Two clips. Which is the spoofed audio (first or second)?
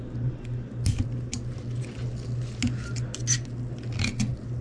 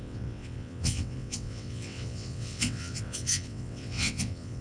second